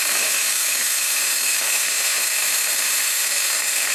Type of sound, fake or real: fake